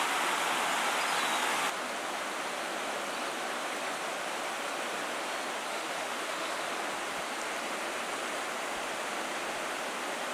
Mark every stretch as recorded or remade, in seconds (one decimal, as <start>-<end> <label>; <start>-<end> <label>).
0.0-5.7 recorded; 5.7-6.7 remade; 6.7-10.3 recorded